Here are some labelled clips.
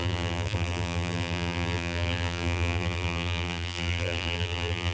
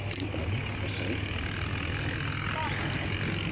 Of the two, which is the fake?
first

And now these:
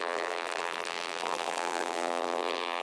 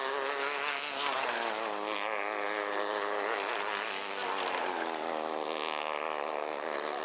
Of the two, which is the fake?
first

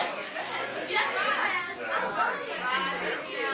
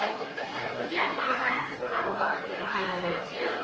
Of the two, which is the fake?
second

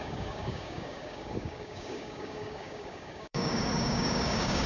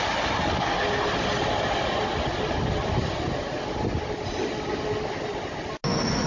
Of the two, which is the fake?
first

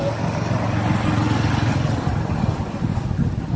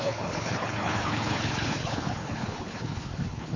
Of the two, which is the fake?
second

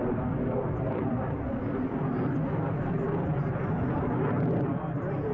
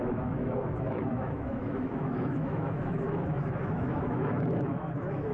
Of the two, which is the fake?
second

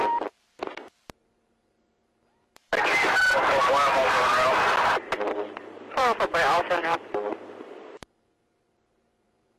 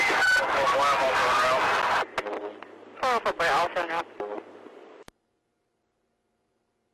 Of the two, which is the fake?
first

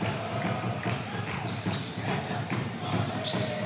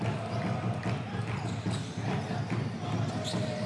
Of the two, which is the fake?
first